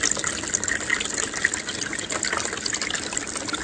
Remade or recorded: recorded